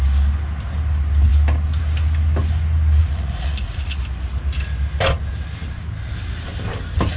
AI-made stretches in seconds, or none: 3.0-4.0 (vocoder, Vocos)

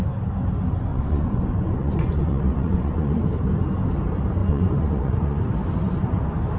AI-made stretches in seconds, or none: 0.9-3.2 (vocoder, Vocos); 4.4-5.4

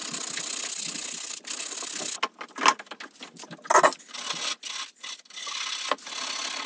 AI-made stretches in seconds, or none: none

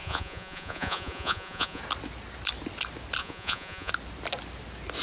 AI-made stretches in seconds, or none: 0.0-1.8 (vocoder, Vocos); 3.2-3.9

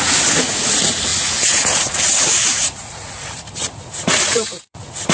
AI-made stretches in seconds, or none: 0.0-5.1 (vocoder, Vocos)

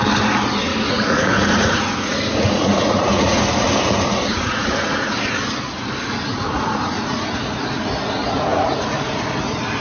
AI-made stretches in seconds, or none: 0.7-3.4 (vocoder, Vocos); 4.3-5.1; 6.3-7.2; 8.2-9.2

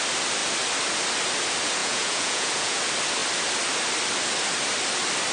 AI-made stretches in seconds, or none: 1.8-2.8 (vocoder, Vocos)